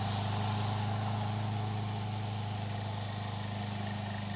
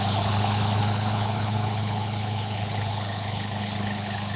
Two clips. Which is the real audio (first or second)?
first